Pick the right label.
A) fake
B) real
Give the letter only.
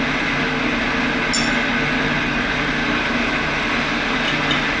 B